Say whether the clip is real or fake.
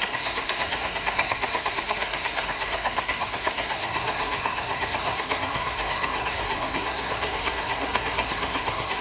fake